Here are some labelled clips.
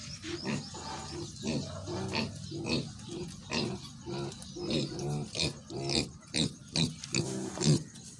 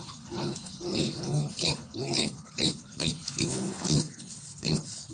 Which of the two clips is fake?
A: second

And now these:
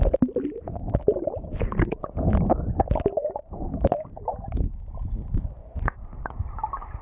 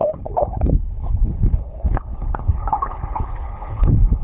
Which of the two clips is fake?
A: second